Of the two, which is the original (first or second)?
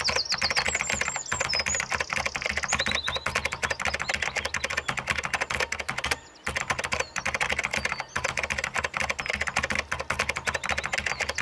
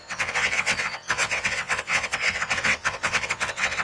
first